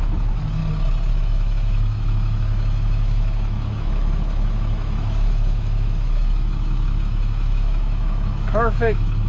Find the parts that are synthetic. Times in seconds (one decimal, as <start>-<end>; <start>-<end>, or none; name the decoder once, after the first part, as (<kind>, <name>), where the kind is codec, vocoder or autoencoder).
0.0-0.6 (autoencoder, DAC-VAE); 1.1-9.3